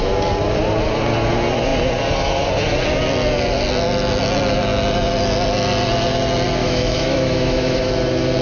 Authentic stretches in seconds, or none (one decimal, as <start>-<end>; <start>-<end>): 0.0-6.6; 7.9-8.4

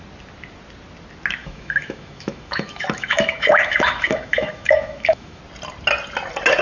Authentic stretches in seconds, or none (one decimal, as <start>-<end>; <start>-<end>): 0.0-1.4; 5.4-6.6

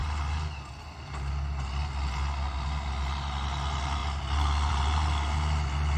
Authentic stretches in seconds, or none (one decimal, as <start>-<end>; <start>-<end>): 0.0-6.0

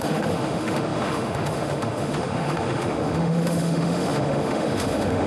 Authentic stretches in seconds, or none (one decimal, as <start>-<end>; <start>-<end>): none

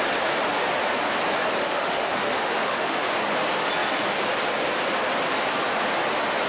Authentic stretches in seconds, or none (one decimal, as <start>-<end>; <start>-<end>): 0.0-1.6; 3.1-6.5

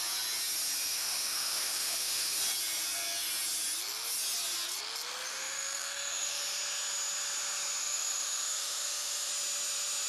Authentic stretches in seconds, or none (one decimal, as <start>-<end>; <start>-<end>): 0.0-0.9; 2.4-5.3; 6.4-7.8; 9.3-10.1

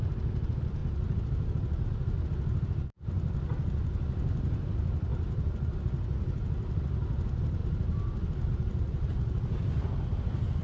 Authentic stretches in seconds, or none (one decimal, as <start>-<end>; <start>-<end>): 0.0-10.6

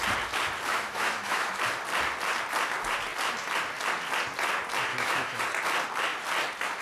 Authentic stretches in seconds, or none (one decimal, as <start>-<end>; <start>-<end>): 0.0-0.7; 1.6-4.9; 5.4-6.8